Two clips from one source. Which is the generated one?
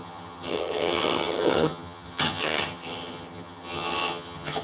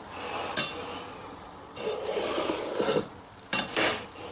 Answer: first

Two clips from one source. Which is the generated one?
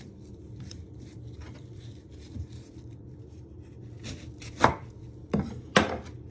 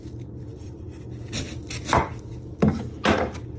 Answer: first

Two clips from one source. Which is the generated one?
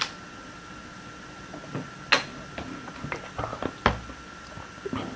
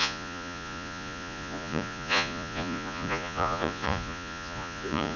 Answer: second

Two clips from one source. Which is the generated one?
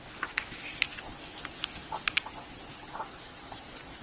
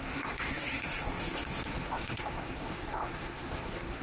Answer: second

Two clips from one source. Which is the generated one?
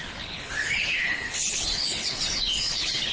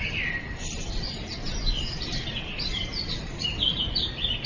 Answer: first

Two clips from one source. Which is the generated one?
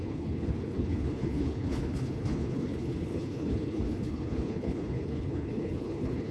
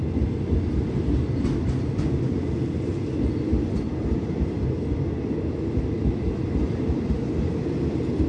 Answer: first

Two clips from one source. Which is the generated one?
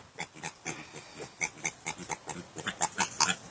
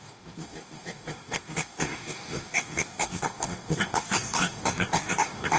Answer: second